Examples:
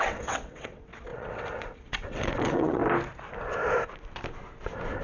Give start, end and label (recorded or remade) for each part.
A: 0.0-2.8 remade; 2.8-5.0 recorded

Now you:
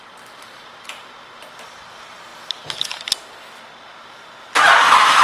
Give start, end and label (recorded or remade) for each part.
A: 0.0-5.2 recorded

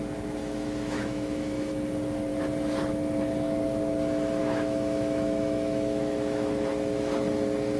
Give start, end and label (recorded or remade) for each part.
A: 0.0-0.4 recorded; 0.4-1.7 remade; 1.7-4.4 recorded; 4.4-6.7 remade; 6.7-7.8 recorded

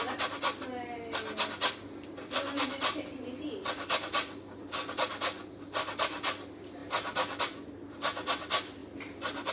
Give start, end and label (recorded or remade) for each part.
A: 0.0-9.5 recorded

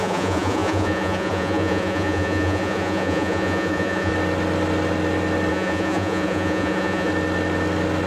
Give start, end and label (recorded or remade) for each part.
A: 0.0-4.1 remade; 4.1-5.5 recorded; 5.5-7.1 remade; 7.1-8.1 recorded